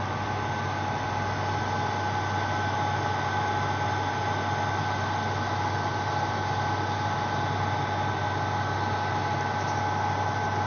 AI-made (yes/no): no